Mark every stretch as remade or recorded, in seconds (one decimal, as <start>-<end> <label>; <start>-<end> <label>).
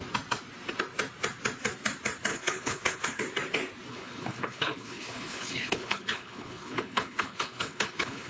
0.0-2.3 recorded; 2.3-3.2 remade; 3.2-3.9 recorded; 3.9-8.3 remade